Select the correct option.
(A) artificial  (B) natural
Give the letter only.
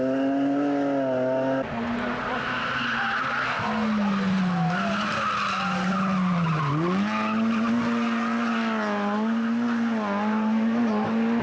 B